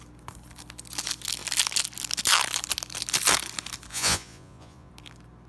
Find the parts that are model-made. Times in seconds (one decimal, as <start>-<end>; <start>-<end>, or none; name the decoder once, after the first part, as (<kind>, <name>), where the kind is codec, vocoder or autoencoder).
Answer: 3.9-4.9 (vocoder, Vocos)